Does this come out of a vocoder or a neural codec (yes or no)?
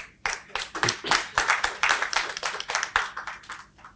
no